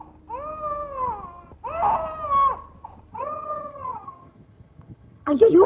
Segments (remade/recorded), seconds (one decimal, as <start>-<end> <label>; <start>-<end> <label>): 0.0-3.1 recorded; 3.1-5.7 remade